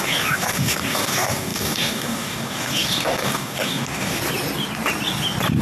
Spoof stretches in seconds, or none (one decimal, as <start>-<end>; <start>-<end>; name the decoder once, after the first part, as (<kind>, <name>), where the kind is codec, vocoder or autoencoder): 0.0-4.2 (codec, DAC)